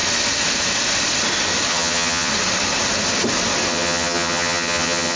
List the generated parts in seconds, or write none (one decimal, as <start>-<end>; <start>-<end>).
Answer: 1.7-2.3; 3.7-5.2